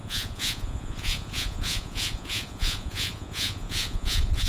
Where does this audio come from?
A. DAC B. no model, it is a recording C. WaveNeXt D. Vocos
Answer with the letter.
D